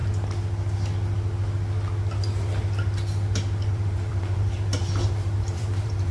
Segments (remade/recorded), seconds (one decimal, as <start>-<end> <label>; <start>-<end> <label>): 0.0-3.7 recorded; 3.7-6.1 remade